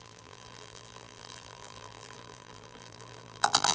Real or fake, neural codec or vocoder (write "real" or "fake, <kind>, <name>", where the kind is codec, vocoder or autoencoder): fake, vocoder, BigVGAN v2